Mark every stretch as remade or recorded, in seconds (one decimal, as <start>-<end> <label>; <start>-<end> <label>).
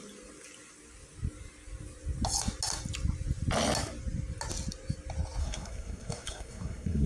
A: 0.0-5.4 recorded; 5.4-7.1 remade